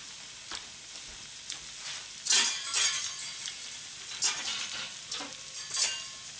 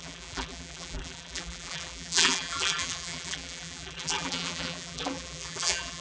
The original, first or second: first